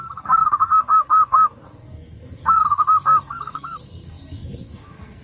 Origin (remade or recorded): remade